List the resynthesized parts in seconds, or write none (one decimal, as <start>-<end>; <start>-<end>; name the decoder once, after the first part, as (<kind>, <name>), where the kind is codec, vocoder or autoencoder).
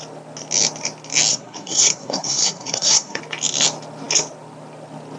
1.3-3.2 (codec, SNAC)